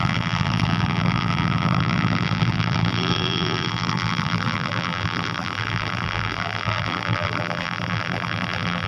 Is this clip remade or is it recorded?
remade